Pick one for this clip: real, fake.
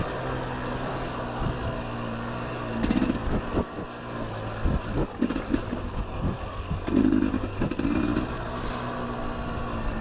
real